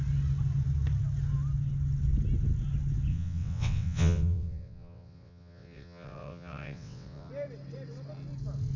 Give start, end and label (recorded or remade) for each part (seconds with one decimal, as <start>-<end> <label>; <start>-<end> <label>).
0.0-3.1 recorded; 3.1-7.3 remade; 7.3-8.8 recorded